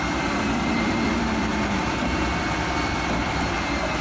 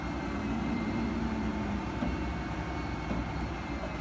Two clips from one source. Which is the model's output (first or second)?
first